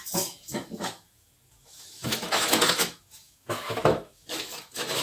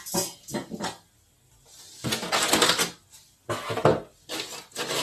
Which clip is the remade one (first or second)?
first